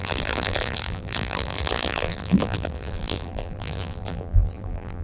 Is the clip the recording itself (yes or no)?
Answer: no